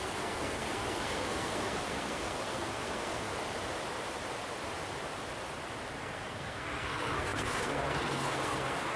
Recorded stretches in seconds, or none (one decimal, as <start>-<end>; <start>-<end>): 3.3-6.0